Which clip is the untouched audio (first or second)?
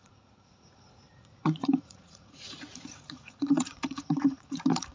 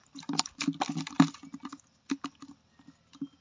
second